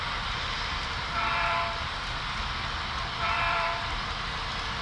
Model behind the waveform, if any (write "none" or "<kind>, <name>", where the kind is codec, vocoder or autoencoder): vocoder, BigVGAN v2